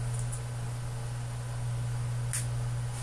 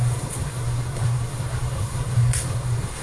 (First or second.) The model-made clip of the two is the second